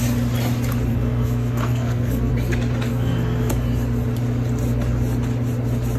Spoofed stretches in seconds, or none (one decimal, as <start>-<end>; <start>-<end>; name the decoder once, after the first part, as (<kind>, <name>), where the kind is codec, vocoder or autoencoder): 0.9-2.3 (codec, SNAC); 2.9-3.5